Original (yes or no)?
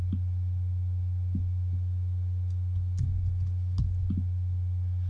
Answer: yes